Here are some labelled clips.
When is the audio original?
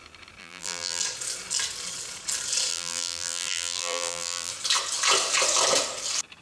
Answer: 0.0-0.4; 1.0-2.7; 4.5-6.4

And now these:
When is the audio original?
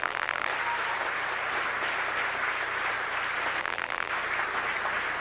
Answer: 0.5-3.6; 4.1-5.2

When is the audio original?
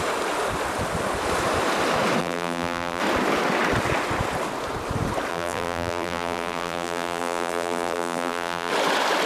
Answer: 0.0-2.2; 3.0-5.3; 8.7-9.3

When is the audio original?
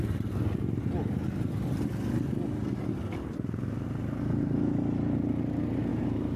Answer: 0.0-5.9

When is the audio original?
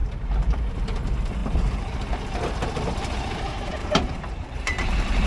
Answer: 0.6-1.4; 2.1-3.8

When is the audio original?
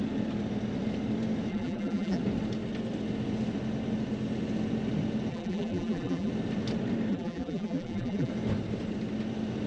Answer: 0.0-1.5; 2.2-5.3; 6.3-7.1; 8.3-9.7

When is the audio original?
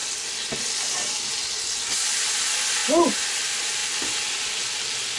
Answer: 0.0-2.8; 3.3-5.2